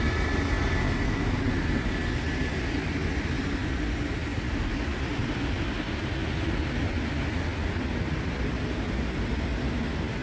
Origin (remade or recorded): recorded